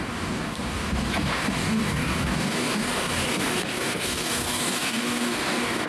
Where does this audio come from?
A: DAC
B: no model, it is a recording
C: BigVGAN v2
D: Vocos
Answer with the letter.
A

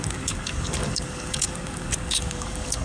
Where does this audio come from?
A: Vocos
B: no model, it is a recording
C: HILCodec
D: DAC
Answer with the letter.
D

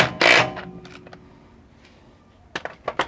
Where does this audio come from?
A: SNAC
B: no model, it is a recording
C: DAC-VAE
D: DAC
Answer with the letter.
B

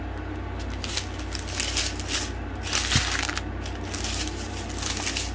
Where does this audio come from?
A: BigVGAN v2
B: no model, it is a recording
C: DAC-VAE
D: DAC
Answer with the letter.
B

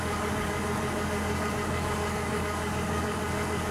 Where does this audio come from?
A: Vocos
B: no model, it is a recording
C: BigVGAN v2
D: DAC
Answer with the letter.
D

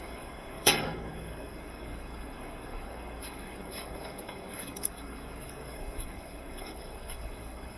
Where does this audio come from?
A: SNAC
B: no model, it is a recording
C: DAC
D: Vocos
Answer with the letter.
C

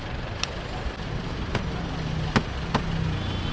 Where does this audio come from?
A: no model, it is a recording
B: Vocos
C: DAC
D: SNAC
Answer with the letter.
A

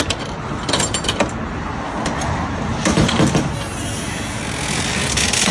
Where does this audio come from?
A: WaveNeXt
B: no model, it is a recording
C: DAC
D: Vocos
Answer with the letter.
B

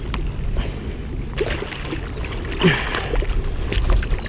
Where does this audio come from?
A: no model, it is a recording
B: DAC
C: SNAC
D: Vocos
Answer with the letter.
A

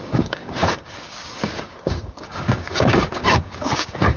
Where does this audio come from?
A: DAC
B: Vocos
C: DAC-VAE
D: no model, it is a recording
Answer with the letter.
A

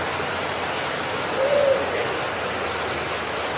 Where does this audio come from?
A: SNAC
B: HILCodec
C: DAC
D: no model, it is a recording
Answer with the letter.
D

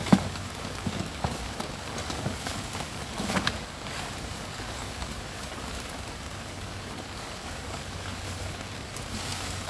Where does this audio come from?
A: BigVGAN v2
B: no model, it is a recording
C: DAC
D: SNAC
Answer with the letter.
C